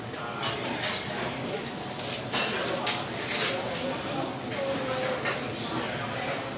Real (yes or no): yes